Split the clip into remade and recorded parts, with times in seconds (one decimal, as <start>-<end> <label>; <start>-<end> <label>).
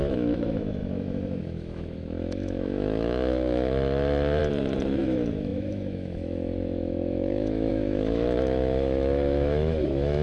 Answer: 0.0-4.4 remade; 4.4-5.0 recorded; 5.0-10.2 remade